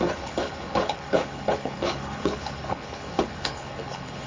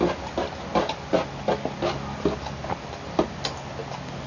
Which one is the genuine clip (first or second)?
second